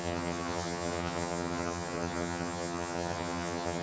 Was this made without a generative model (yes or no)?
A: no